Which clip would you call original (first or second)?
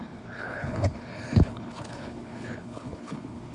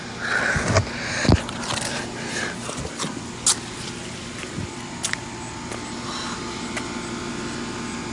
second